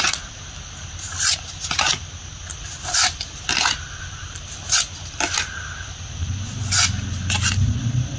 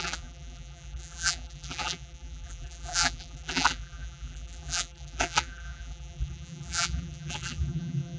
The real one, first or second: first